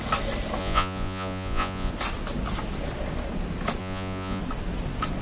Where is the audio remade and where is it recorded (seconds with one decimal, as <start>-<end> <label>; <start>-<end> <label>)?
0.0-0.6 recorded; 0.6-1.9 remade; 1.9-3.8 recorded; 3.8-4.4 remade; 4.4-5.2 recorded